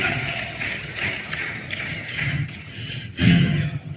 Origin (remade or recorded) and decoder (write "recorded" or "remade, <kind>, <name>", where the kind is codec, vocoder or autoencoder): remade, vocoder, HiFi-GAN